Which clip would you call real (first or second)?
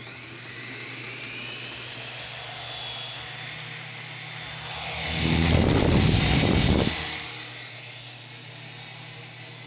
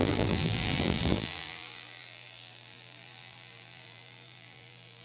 first